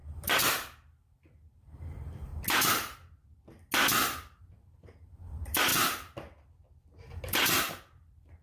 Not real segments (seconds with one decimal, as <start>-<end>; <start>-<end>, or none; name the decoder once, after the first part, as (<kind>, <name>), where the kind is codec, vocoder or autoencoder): 0.5-2.3 (vocoder, BigVGAN v2); 4.4-5.7; 7.1-8.4